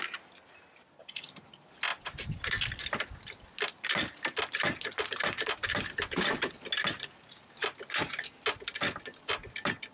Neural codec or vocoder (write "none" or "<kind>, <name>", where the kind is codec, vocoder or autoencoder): none